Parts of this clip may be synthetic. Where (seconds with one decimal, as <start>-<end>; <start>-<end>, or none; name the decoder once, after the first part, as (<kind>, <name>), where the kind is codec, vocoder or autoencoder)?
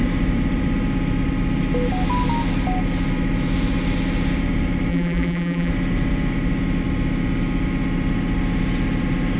4.9-5.7 (vocoder, BigVGAN v2)